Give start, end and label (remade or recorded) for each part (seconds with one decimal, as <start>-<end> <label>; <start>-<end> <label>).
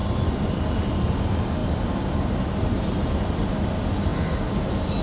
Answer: 0.0-0.5 remade; 0.5-1.6 recorded; 1.6-3.5 remade; 3.5-5.0 recorded